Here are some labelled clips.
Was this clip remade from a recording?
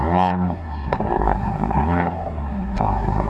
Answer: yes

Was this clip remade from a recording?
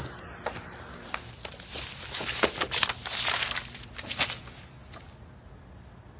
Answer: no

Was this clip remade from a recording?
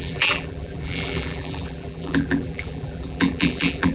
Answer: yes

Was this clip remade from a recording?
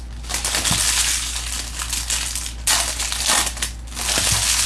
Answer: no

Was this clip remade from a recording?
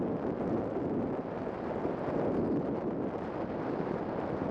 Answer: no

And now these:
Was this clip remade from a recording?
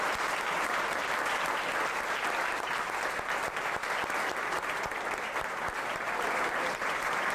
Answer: yes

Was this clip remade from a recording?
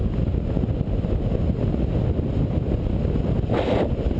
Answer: no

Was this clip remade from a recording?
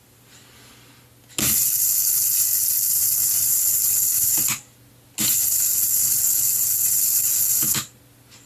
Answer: no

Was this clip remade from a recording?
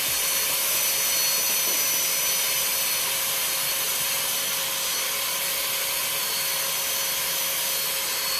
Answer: no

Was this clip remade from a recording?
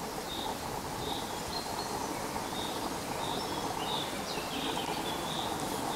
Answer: yes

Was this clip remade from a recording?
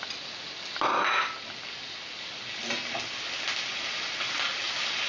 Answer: no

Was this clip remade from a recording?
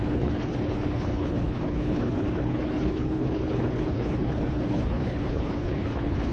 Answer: yes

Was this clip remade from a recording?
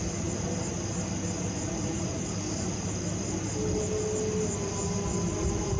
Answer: no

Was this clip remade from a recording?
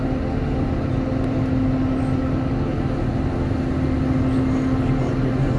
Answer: no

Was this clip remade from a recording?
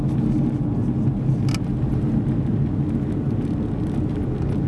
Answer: no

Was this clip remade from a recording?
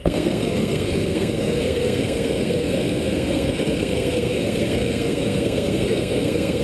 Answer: yes